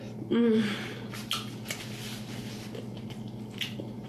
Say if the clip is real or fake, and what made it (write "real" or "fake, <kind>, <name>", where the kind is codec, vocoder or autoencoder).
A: real